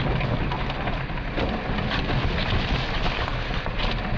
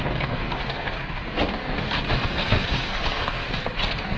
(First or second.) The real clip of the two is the first